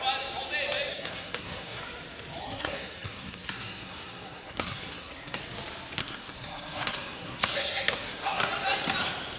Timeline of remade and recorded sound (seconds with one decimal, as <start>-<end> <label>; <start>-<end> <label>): 0.0-0.9 recorded; 0.9-1.8 remade; 1.8-2.4 recorded; 2.4-5.4 remade; 5.4-6.0 recorded; 6.0-8.5 remade; 8.5-9.4 recorded